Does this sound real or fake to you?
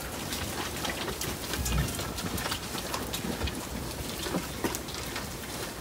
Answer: real